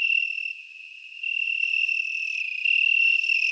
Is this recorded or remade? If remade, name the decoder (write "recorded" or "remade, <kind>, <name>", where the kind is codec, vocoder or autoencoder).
recorded